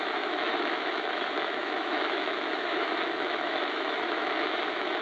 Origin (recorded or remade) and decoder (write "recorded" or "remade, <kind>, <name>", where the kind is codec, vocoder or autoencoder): remade, autoencoder, DAC-VAE